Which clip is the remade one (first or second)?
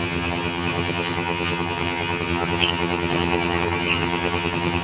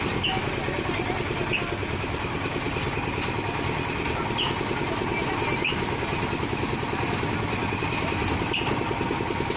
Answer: first